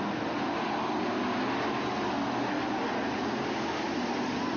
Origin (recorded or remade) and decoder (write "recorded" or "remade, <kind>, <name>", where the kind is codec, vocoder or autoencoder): recorded